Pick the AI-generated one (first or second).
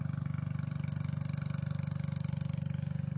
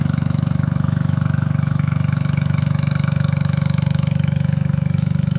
second